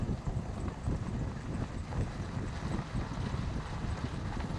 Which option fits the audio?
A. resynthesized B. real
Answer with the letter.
B